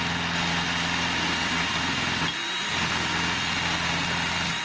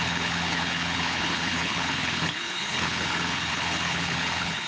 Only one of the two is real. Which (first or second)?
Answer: first